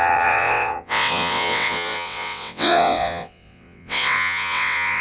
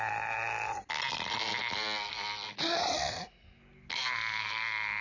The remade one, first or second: first